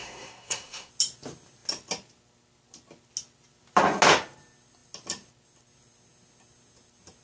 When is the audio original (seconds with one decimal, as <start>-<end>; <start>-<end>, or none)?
0.9-7.2